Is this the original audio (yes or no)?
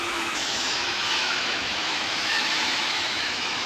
no